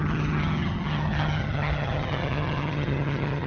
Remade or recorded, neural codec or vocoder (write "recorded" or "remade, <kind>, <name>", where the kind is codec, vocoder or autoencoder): remade, vocoder, HiFi-GAN